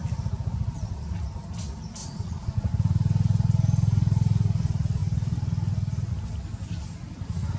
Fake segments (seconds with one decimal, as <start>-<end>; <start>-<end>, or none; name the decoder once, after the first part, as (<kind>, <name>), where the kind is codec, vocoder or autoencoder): 2.0-2.7 (vocoder, Vocos)